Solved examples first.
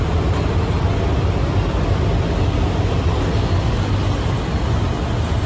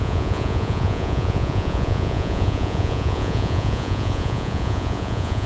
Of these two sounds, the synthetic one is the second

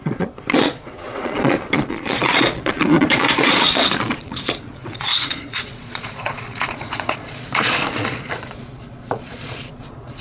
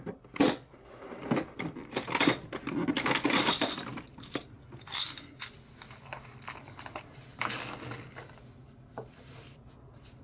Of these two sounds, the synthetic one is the first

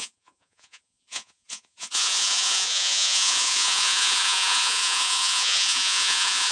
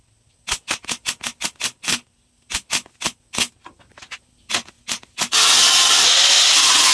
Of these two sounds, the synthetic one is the first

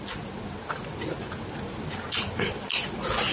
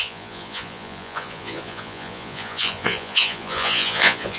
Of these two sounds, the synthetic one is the second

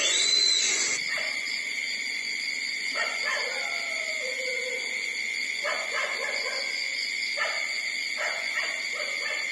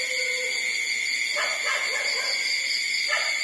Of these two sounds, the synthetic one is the first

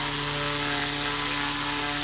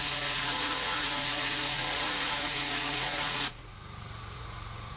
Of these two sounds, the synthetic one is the second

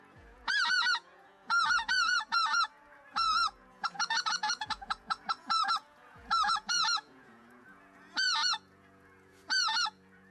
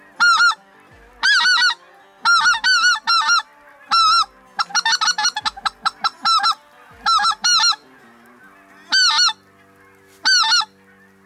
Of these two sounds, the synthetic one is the first